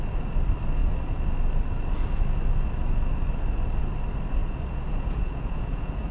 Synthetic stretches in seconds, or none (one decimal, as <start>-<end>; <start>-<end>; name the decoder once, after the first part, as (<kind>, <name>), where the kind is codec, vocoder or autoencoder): 4.4-6.1 (vocoder, Vocos)